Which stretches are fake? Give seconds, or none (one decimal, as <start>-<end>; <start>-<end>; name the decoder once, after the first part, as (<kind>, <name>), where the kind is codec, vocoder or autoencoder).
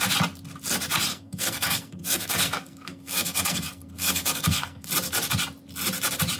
1.1-4.9 (codec, SNAC)